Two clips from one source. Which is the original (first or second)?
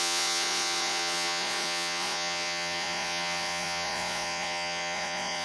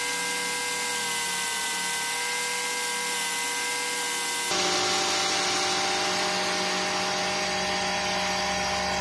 second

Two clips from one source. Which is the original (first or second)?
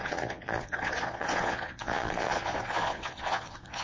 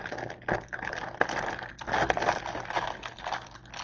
second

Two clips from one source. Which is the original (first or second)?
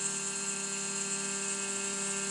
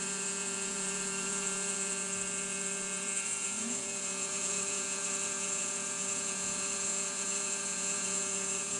first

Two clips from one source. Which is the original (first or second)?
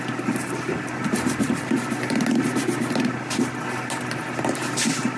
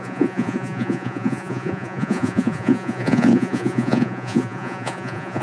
first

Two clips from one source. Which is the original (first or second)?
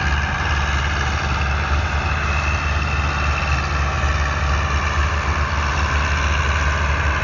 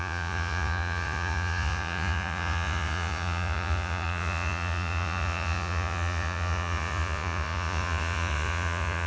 first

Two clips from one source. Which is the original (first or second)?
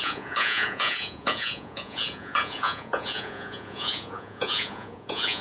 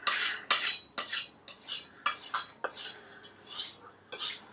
second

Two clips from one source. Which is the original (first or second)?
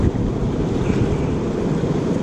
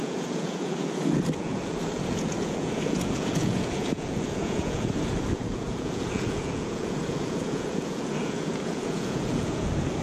first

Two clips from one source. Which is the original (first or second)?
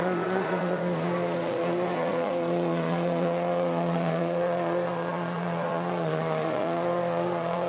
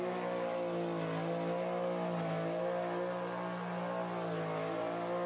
second